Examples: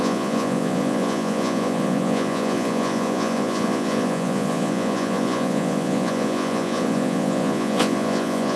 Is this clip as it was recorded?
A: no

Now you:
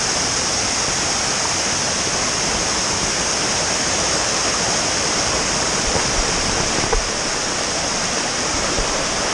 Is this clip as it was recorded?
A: yes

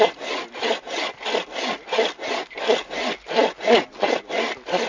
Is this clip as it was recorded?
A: yes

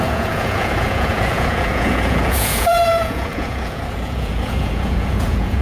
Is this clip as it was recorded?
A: no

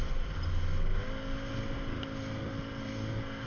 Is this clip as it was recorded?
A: yes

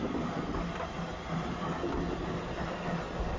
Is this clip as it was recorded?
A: yes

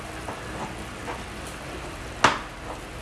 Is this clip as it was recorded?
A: yes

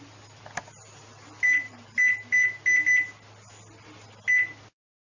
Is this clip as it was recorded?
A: yes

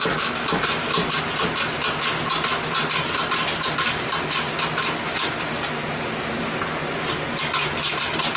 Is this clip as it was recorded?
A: yes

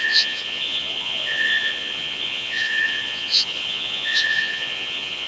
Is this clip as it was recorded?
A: no